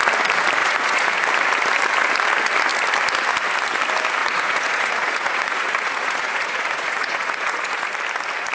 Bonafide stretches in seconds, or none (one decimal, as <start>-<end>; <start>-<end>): 0.0-0.6; 1.2-4.2; 7.9-8.5